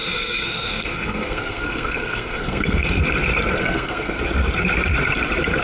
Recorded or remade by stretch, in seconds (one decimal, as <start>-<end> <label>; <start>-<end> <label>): 0.0-3.0 remade; 3.0-3.6 recorded; 3.6-4.2 remade; 4.2-5.6 recorded